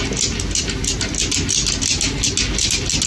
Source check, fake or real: real